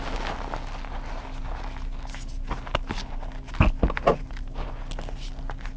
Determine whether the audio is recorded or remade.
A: recorded